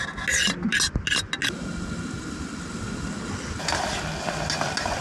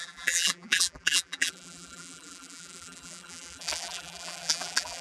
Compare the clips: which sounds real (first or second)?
first